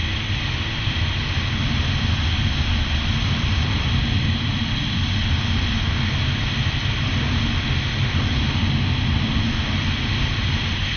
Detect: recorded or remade recorded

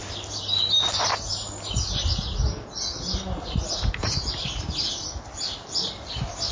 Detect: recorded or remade recorded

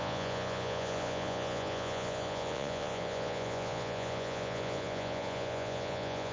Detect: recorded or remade remade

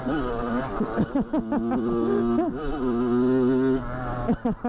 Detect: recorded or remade recorded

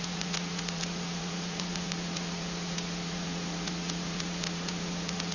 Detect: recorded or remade remade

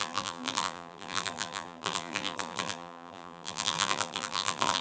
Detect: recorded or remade remade